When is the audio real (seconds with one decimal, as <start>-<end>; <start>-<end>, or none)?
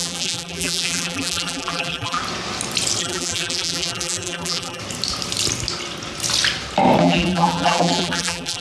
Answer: 2.2-3.0; 4.8-7.0